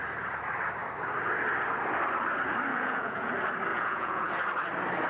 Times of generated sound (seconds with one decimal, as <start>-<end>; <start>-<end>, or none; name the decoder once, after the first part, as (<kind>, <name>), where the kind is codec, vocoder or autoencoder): 2.7-3.3 (vocoder, Vocos); 3.7-4.3